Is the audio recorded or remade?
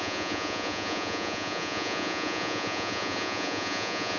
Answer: remade